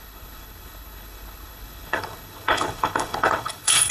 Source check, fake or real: fake